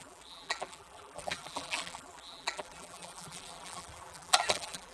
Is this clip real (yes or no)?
no